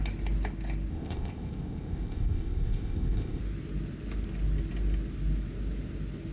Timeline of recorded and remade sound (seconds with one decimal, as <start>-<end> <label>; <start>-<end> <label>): 0.0-0.9 recorded; 0.9-3.4 remade; 3.4-6.3 recorded